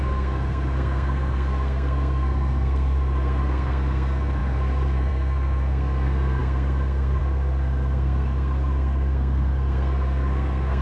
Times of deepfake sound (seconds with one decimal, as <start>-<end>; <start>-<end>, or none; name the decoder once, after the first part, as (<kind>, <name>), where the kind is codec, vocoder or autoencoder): 0.0-10.8 (codec, SNAC)